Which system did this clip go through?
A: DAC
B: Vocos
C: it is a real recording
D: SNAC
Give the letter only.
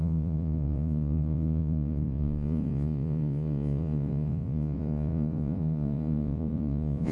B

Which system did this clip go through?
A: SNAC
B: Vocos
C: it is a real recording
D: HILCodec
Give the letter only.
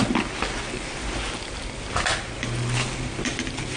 C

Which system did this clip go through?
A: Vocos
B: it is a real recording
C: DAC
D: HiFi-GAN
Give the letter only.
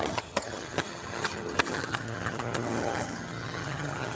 D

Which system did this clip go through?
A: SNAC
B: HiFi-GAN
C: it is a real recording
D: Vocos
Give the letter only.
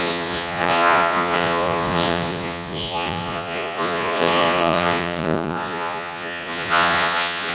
D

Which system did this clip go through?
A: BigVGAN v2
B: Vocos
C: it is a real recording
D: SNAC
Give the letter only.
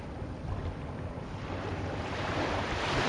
A